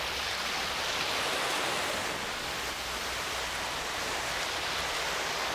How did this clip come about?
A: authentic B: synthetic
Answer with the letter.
A